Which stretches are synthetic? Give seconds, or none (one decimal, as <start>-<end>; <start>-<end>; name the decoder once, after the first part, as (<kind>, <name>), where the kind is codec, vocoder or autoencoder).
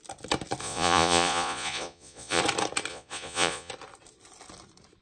0.6-2.4 (vocoder, Vocos); 2.9-3.7